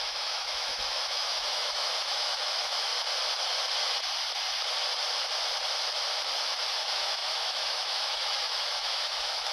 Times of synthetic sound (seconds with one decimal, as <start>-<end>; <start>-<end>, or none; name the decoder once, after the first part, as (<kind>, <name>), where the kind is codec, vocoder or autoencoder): 0.0-2.9 (autoencoder, DAC-VAE); 6.8-9.5